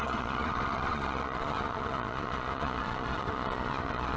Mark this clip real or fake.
fake